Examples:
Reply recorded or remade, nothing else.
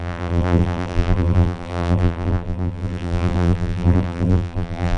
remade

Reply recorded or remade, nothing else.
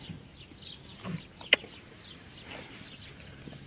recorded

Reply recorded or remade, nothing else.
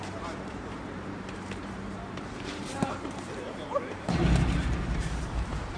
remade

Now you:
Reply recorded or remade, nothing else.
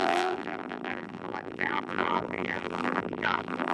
remade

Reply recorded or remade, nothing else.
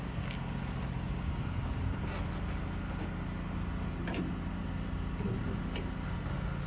recorded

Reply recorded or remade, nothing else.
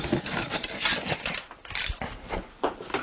recorded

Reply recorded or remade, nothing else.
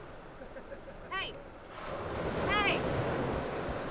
recorded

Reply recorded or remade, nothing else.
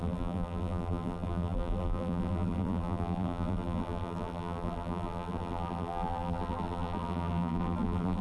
remade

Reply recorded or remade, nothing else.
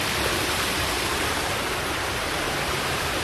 remade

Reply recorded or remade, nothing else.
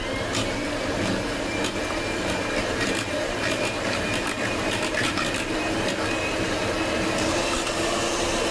remade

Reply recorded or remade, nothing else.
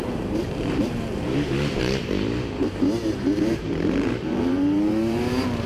remade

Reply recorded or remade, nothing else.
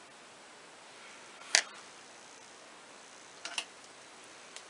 recorded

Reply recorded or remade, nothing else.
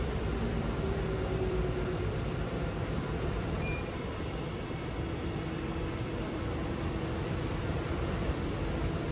remade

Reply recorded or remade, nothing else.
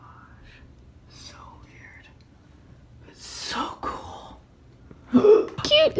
recorded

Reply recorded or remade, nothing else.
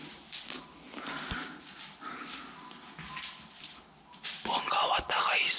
recorded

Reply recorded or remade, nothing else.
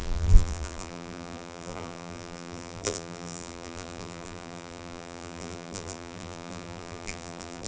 remade